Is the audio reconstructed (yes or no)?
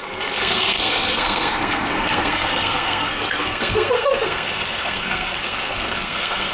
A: yes